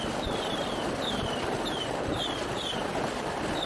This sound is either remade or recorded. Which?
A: remade